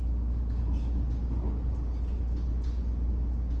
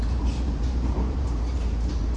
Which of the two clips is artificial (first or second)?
second